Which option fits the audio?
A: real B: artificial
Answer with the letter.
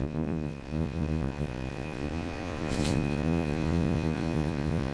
B